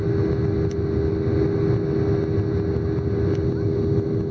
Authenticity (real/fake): real